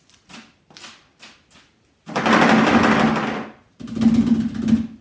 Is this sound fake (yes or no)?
no